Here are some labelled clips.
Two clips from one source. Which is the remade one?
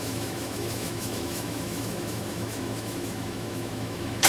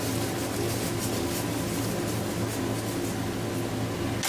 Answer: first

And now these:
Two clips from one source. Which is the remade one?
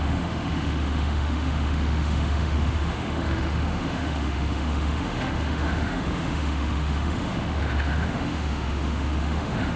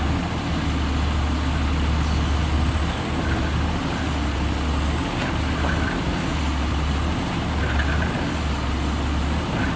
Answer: first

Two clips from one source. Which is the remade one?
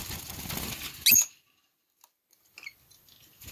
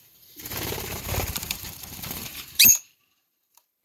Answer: second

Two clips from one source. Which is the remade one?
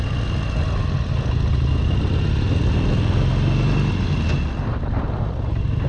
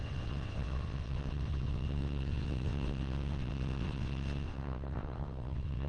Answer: second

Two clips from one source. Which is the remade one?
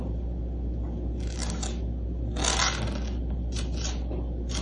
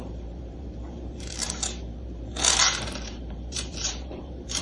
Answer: second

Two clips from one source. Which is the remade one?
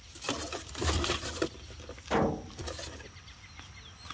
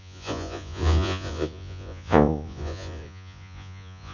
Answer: second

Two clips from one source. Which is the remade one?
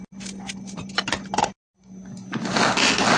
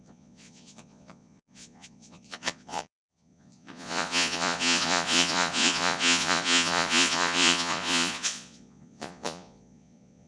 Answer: second